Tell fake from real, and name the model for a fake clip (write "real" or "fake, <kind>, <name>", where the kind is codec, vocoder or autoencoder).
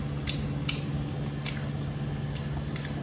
real